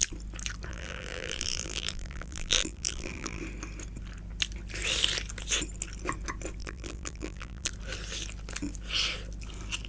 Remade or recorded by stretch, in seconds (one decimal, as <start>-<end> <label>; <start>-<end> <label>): 0.0-0.7 recorded; 0.7-3.4 remade; 3.4-6.6 recorded; 6.6-7.7 remade; 7.7-9.9 recorded

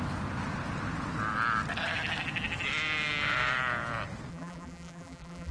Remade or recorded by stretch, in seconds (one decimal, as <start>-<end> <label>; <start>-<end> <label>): 0.0-4.3 recorded; 4.3-5.5 remade

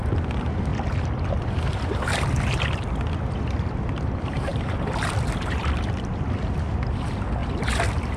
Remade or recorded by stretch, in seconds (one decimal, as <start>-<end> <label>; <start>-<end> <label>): 0.0-0.7 recorded; 0.7-2.1 remade; 2.1-4.5 recorded; 4.5-6.1 remade; 6.1-7.4 recorded; 7.4-8.2 remade

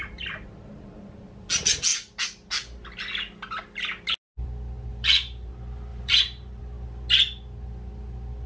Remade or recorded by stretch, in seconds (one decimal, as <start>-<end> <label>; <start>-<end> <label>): 0.0-4.9 recorded; 4.9-5.5 remade; 5.5-5.9 recorded; 5.9-6.6 remade; 6.6-8.5 recorded

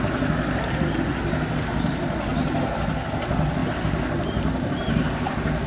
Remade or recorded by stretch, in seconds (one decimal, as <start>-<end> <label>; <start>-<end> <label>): 0.0-3.6 recorded; 3.6-5.3 remade; 5.3-5.7 recorded

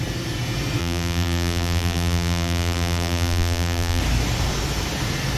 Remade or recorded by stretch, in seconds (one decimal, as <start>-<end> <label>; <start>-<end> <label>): 0.0-0.8 recorded; 0.8-4.0 remade; 4.0-5.4 recorded

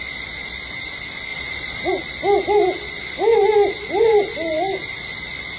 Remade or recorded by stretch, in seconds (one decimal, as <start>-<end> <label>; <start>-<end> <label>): 0.0-1.3 recorded; 1.3-1.9 remade; 1.9-5.6 recorded

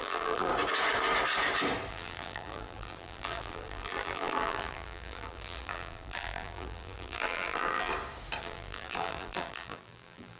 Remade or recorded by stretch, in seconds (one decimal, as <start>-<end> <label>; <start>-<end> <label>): 0.0-0.5 remade; 0.5-1.9 recorded; 1.9-7.9 remade; 7.9-8.4 recorded; 8.4-10.4 remade